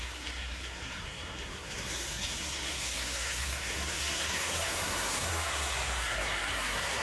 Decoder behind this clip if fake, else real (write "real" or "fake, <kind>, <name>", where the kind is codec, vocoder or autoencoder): fake, codec, SNAC